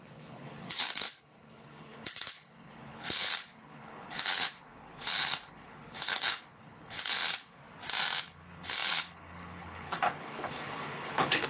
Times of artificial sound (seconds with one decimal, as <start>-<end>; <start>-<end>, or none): 0.0-7.6; 8.2-11.5